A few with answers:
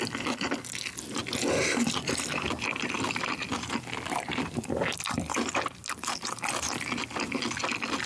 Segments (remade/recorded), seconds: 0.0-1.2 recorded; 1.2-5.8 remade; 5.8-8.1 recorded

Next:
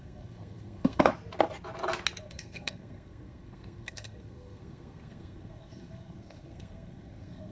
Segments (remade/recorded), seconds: 0.0-1.1 remade; 1.1-2.2 recorded; 2.2-7.5 remade

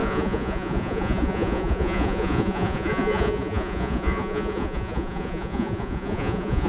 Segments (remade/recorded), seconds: 0.0-6.7 remade

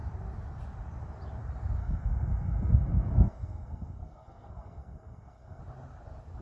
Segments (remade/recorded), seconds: 0.0-1.8 recorded; 1.8-5.6 remade; 5.6-6.4 recorded

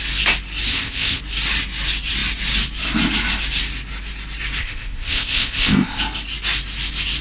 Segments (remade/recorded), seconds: 0.0-0.7 recorded; 0.7-1.2 remade; 1.2-4.6 recorded; 4.6-6.0 remade; 6.0-7.2 recorded

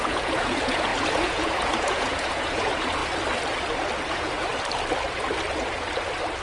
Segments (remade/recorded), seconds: 0.0-3.0 remade; 3.0-4.1 recorded; 4.1-4.5 remade; 4.5-6.4 recorded

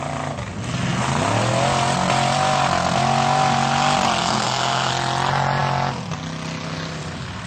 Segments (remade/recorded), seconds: 0.0-4.2 recorded; 4.2-4.9 remade; 4.9-7.5 recorded

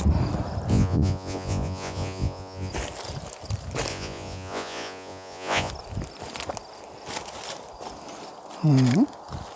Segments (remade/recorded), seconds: 0.0-0.7 recorded; 0.7-2.7 remade; 2.7-3.9 recorded; 3.9-5.7 remade; 5.7-9.6 recorded